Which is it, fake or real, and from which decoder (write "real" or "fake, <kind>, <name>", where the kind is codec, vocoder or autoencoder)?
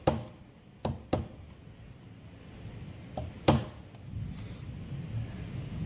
real